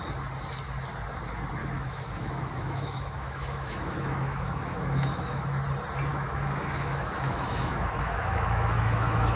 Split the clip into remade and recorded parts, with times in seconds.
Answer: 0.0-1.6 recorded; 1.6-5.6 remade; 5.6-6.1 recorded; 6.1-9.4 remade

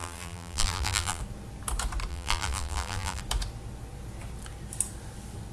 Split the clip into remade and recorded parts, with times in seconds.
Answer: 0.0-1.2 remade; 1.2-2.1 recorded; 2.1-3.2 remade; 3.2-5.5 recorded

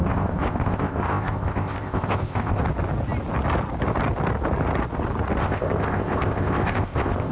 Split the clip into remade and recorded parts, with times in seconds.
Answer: 0.0-2.6 remade; 2.6-5.4 recorded; 5.4-7.3 remade

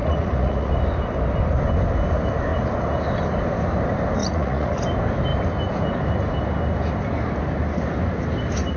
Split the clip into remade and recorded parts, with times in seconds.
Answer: 0.0-0.7 remade; 0.7-4.2 recorded; 4.2-4.8 remade; 4.8-8.8 recorded

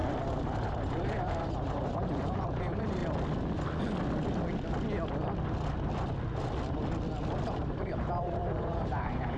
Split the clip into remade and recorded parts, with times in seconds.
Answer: 0.0-3.0 remade; 3.0-7.5 recorded; 7.5-9.4 remade

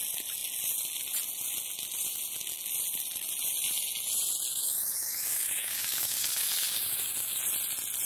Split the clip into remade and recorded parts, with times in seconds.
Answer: 0.0-4.5 recorded; 4.5-7.4 remade; 7.4-8.1 recorded